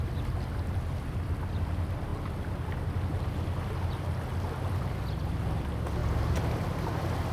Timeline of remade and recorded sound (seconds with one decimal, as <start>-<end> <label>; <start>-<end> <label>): 0.0-7.3 recorded